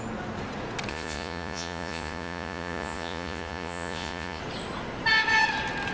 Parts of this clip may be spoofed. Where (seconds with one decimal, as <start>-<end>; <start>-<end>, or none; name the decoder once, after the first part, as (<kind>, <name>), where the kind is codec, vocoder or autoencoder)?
0.9-4.4 (vocoder, Vocos)